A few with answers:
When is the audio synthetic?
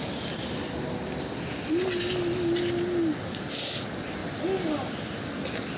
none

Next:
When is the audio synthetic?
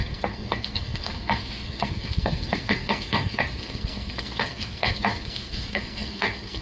0.0-6.6 (codec, SNAC)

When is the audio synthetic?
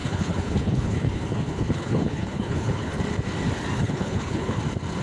0.0-3.0 (codec, HILCodec); 3.8-4.6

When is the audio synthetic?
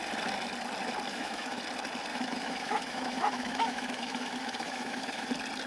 1.1-1.6 (autoencoder, DAC-VAE); 2.1-5.3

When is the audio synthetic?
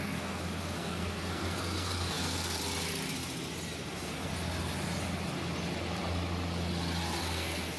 0.0-2.6 (codec, SNAC); 3.9-4.3; 7.2-7.8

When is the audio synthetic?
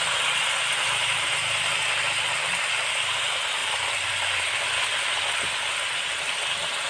3.6-4.1 (vocoder, BigVGAN v2)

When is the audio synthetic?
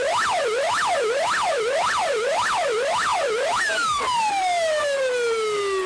none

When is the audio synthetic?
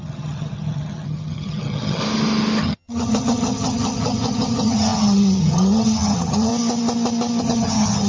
0.0-2.0 (vocoder, HiFi-GAN); 2.6-6.5; 7.4-8.1